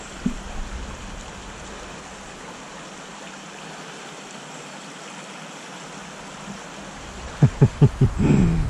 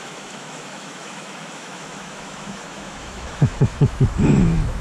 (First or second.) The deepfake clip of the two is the second